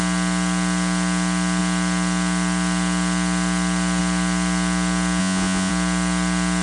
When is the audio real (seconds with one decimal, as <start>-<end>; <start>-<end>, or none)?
0.0-5.2; 5.7-6.6